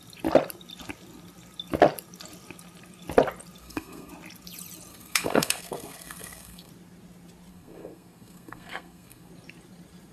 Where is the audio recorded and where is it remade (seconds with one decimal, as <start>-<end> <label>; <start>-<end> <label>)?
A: 0.0-3.6 recorded; 3.6-4.1 remade; 4.1-4.9 recorded; 4.9-6.7 remade; 6.7-7.5 recorded; 7.5-9.3 remade; 9.3-10.1 recorded